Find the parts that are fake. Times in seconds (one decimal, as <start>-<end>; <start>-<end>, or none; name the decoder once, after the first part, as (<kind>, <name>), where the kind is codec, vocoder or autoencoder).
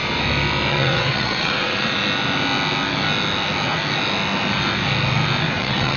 0.7-2.0 (vocoder, WaveNeXt); 5.6-6.0